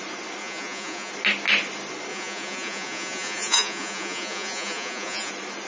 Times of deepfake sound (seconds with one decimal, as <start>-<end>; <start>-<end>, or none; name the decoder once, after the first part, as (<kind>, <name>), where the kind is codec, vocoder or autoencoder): 0.4-1.1 (vocoder, Vocos); 2.1-5.3

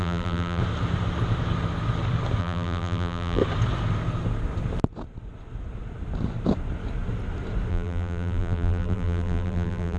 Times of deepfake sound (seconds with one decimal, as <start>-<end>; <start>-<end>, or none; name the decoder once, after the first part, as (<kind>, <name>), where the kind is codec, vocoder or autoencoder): 0.0-0.6 (vocoder, BigVGAN v2); 2.4-3.4; 7.7-10.0

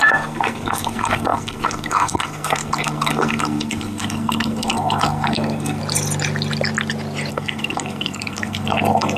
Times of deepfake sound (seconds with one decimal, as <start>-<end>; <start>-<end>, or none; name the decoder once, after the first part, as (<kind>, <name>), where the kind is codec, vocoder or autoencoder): 0.0-5.8 (codec, SNAC); 7.3-9.2

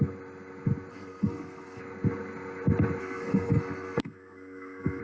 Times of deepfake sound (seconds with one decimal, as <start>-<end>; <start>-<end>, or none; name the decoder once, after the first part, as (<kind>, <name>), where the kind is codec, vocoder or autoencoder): 0.9-1.8 (codec, SNAC); 3.0-5.0

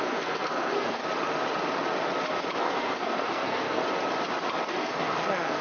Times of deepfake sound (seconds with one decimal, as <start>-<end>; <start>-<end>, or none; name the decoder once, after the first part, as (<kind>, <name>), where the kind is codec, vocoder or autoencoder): 0.0-1.0 (codec, SNAC); 2.6-3.8; 4.7-5.6